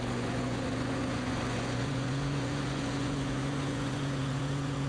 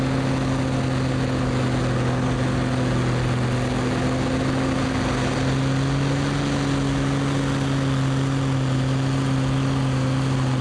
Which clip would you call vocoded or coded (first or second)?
first